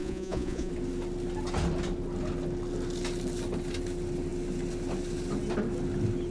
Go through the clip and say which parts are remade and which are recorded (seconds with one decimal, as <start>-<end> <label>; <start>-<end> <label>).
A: 0.0-0.7 remade; 0.7-6.3 recorded